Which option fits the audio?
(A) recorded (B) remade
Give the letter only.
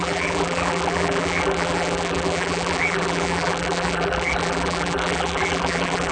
B